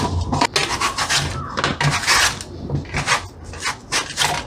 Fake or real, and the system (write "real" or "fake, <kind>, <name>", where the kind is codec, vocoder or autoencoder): real